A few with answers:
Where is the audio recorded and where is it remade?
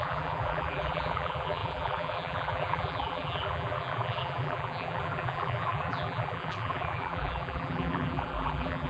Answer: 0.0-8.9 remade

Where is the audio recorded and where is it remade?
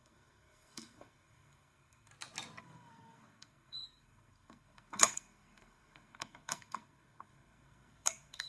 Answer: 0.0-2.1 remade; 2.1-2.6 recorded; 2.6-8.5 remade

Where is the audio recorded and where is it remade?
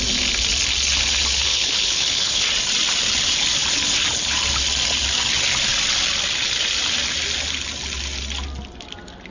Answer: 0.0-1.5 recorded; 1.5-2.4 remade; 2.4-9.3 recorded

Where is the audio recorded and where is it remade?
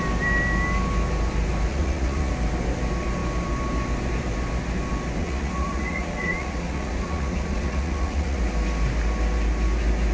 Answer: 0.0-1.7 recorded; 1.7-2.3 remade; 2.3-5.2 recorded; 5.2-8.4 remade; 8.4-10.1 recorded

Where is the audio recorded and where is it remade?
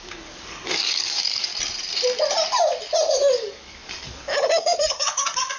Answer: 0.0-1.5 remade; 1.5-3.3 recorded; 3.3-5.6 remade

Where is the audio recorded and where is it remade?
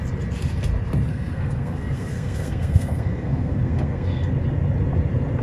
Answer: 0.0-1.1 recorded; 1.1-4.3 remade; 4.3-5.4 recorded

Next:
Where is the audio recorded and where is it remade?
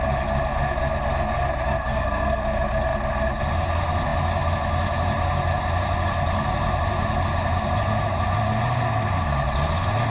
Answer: 0.0-1.8 recorded; 1.8-2.4 remade; 2.4-10.1 recorded